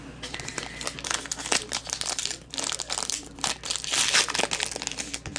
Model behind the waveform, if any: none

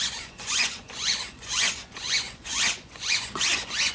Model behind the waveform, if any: vocoder, Vocos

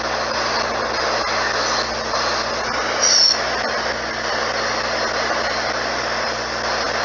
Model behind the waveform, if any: none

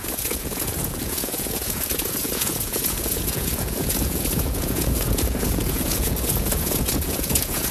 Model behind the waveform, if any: vocoder, Vocos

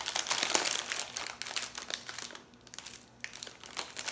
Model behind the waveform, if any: none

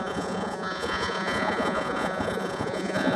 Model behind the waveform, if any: vocoder, Vocos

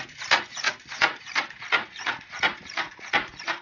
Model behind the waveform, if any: vocoder, Vocos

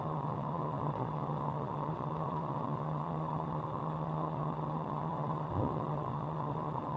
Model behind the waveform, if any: vocoder, Vocos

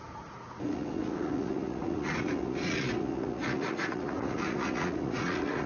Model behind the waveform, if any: vocoder, Vocos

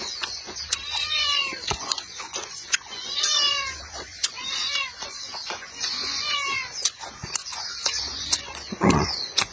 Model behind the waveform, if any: vocoder, Vocos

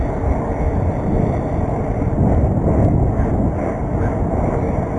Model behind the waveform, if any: none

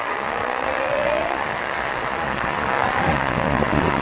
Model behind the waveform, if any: vocoder, Vocos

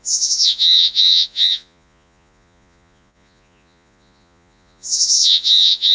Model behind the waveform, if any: vocoder, Vocos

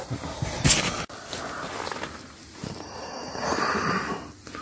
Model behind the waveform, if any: none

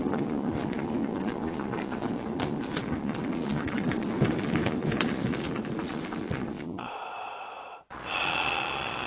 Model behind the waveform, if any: vocoder, Vocos